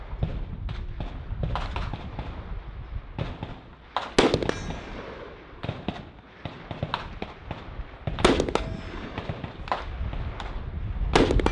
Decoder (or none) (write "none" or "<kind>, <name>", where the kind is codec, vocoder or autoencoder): none